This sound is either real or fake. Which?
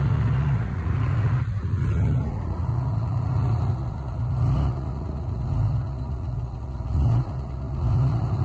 fake